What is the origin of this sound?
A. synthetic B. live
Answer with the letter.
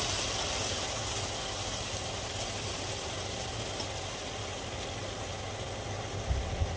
B